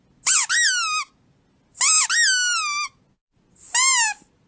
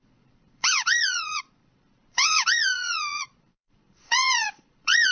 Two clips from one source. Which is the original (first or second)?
first